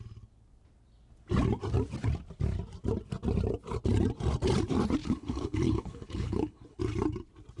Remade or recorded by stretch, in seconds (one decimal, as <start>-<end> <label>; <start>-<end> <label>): 0.0-5.0 recorded; 5.0-6.8 remade; 6.8-7.6 recorded